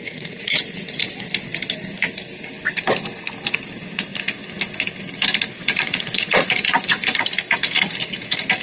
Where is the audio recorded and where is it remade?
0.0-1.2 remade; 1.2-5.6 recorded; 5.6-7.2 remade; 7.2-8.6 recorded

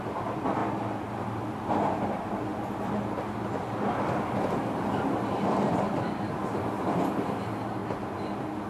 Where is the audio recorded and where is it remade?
0.0-2.5 remade; 2.5-7.1 recorded; 7.1-7.8 remade; 7.8-8.7 recorded